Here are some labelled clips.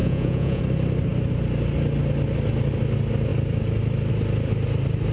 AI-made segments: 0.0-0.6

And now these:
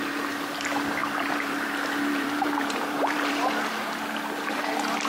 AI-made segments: 1.0-3.7

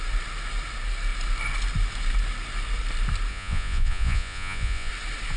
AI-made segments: 3.3-4.9

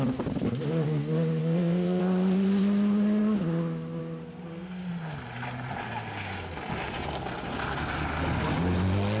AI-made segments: 1.4-2.0

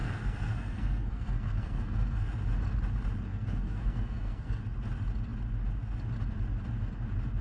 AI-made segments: 0.0-2.3; 3.3-4.6

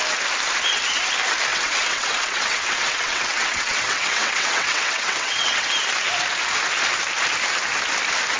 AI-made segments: 1.5-5.7

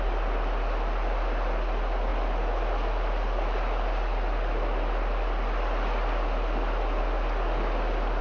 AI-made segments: none

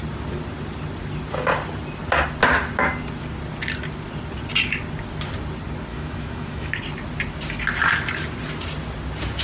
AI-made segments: 5.9-6.7